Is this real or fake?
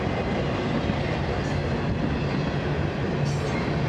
real